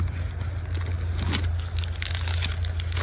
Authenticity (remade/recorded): recorded